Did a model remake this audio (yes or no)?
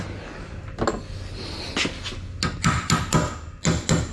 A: no